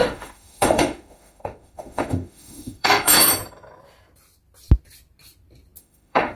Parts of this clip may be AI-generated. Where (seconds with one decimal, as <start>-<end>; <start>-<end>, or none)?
0.0-3.3; 5.8-6.4